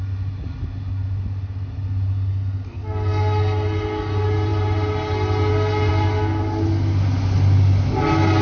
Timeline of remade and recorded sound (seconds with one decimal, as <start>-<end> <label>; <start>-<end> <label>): 0.0-8.4 recorded